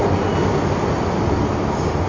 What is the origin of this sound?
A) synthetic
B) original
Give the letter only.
B